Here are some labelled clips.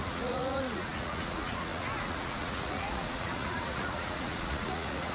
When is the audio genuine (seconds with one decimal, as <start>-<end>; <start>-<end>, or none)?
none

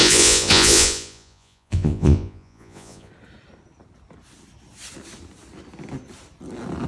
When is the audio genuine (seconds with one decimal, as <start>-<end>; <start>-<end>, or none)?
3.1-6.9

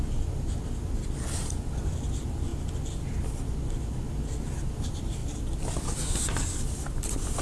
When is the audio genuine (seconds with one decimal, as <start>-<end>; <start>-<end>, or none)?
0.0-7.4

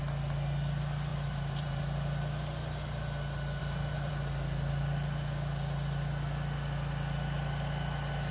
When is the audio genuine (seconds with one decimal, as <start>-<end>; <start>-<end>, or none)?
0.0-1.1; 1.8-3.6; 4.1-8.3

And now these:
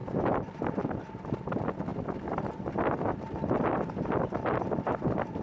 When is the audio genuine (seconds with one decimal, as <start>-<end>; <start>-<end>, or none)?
0.9-5.4

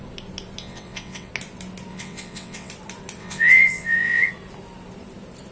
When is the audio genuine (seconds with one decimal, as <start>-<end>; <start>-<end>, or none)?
0.0-0.6; 1.3-1.9; 2.7-3.2; 4.3-5.5

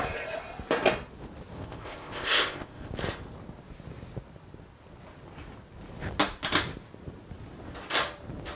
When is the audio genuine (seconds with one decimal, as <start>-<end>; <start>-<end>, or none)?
0.0-1.5; 2.9-8.6